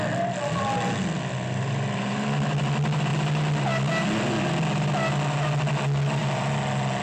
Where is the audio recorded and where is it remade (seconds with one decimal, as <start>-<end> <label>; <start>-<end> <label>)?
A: 0.0-7.0 recorded